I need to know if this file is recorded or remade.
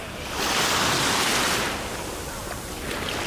recorded